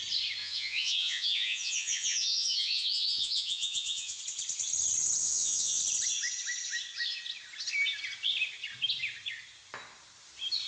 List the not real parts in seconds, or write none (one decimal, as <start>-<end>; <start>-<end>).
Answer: 0.4-4.2; 5.2-5.8